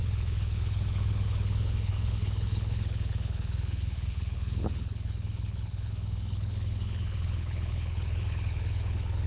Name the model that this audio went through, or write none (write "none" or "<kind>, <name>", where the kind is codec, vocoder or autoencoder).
codec, HILCodec